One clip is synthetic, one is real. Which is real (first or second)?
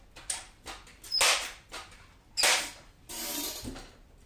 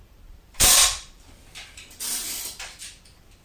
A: first